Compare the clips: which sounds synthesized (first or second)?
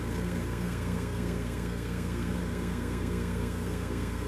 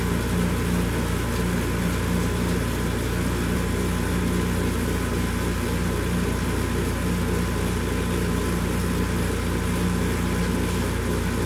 first